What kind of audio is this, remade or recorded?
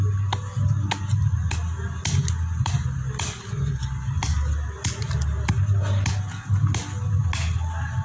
recorded